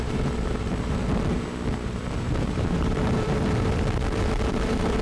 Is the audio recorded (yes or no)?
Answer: no